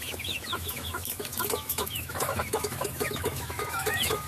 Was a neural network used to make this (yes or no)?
yes